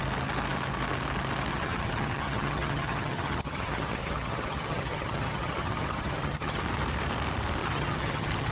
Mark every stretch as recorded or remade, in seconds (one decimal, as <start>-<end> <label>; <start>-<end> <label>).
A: 0.0-1.5 recorded; 1.5-6.6 remade; 6.6-7.6 recorded; 7.6-8.5 remade